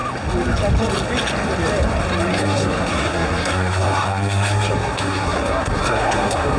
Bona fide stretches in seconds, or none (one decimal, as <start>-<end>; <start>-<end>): 0.0-2.3